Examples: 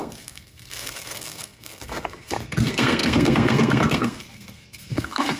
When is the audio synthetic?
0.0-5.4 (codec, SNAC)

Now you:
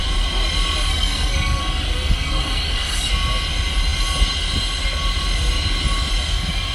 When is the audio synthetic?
0.9-3.1 (codec, SNAC)

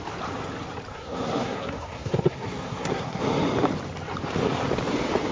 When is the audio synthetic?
0.9-3.2 (codec, SNAC)

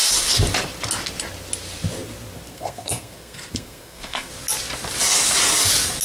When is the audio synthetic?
2.5-4.3 (codec, SNAC)